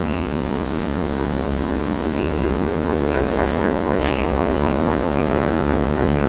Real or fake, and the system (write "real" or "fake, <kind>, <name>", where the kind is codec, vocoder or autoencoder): fake, vocoder, Vocos